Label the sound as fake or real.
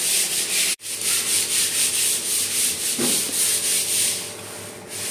real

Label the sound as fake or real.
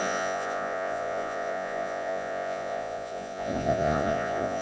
fake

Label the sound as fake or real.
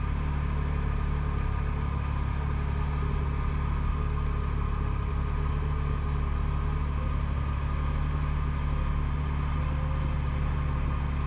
real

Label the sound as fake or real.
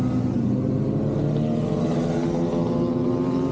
real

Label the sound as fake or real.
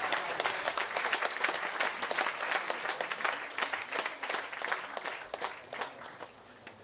real